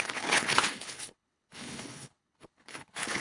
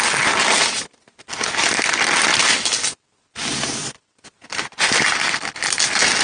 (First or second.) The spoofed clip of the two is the first